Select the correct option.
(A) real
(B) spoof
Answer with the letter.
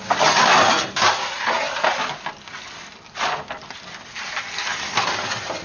A